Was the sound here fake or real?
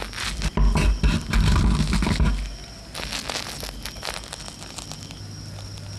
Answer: real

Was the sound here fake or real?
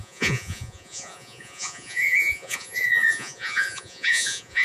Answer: fake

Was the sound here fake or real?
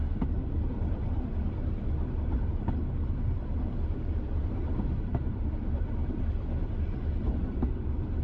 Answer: real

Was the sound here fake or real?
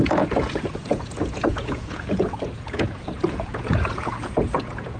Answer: fake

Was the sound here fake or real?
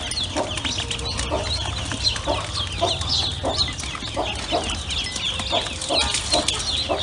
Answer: real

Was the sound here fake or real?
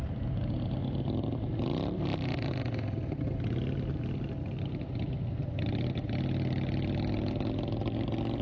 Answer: real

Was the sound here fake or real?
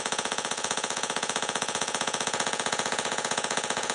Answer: fake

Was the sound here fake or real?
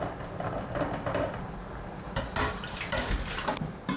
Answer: real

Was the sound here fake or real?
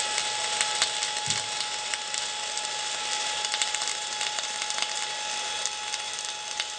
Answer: real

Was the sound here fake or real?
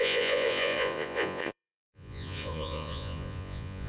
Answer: fake